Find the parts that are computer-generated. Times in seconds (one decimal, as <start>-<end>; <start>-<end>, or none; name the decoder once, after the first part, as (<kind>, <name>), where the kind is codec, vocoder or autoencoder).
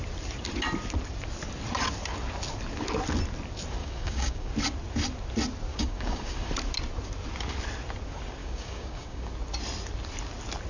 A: 3.8-4.5 (codec, DAC); 5.7-6.5; 8.4-9.3